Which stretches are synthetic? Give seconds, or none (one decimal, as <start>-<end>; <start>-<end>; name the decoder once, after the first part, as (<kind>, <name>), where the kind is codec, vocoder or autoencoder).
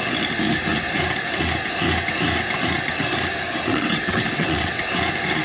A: 3.7-4.9 (vocoder, WaveNeXt)